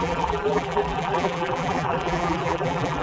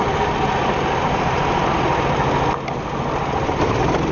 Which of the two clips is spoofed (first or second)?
first